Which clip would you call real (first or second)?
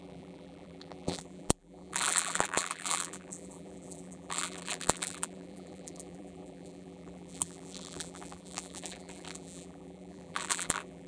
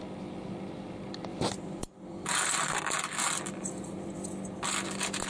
second